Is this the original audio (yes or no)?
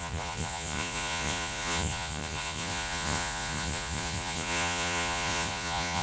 no